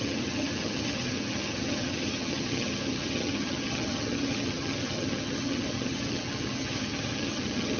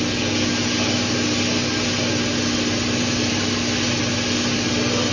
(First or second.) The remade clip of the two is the first